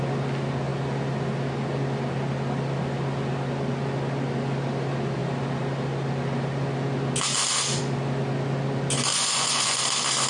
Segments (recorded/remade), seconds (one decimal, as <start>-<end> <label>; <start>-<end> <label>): 0.0-9.1 recorded; 9.1-9.8 remade; 9.8-10.3 recorded